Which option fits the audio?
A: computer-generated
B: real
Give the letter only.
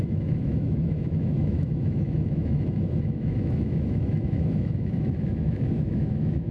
A